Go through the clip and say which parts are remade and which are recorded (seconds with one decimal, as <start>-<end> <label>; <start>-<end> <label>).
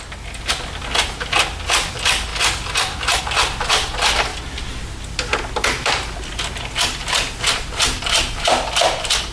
0.0-9.3 recorded